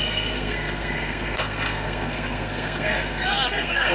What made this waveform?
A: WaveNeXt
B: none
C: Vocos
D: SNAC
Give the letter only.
D